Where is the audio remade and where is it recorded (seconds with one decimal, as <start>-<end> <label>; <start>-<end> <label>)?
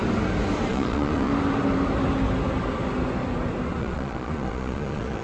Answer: 0.0-0.7 recorded; 0.7-1.3 remade; 1.3-3.8 recorded; 3.8-5.2 remade